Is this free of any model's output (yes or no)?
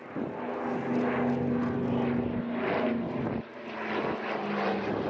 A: yes